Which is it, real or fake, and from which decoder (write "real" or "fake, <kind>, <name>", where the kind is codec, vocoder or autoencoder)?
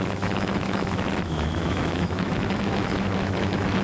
fake, autoencoder, DAC-VAE